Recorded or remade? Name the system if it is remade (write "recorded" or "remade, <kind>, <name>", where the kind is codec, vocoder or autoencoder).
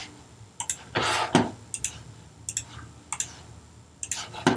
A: recorded